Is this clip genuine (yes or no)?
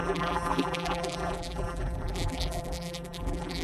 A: no